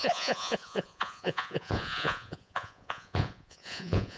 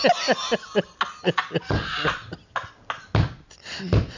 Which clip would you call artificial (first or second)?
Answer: first